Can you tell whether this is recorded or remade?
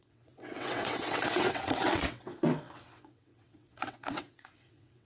remade